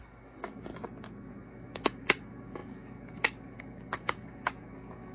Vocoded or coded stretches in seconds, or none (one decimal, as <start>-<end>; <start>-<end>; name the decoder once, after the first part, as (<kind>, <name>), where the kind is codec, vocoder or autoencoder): 0.0-0.7 (codec, DAC); 1.3-5.1